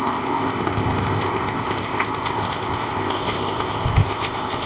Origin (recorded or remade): remade